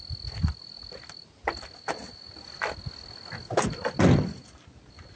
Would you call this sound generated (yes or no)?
no